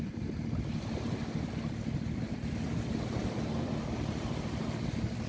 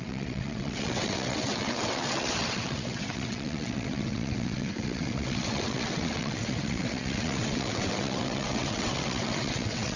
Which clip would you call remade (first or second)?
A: second